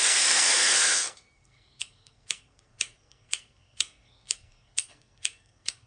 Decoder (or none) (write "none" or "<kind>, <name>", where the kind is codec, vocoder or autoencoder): codec, SNAC